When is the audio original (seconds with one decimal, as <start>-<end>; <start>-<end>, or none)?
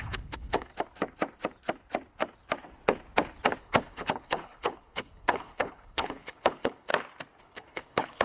0.7-3.6; 6.9-7.4